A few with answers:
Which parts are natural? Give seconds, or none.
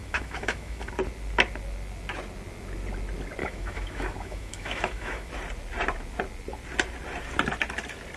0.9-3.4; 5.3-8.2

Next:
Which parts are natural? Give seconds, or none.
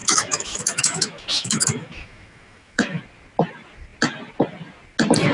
3.0-5.3